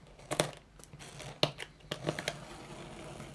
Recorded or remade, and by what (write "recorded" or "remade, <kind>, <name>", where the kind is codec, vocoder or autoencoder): recorded